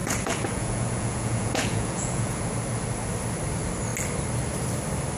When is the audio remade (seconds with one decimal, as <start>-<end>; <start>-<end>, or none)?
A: 0.0-2.4